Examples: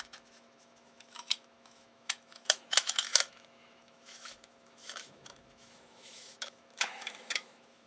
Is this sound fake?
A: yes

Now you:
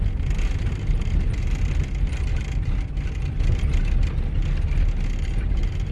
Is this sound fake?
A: no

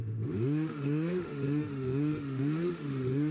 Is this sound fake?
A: yes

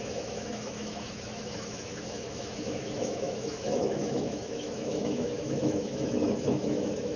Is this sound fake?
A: yes